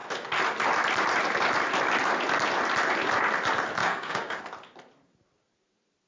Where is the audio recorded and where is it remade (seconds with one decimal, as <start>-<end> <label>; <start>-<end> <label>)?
0.0-3.8 recorded; 3.8-4.4 remade; 4.4-6.1 recorded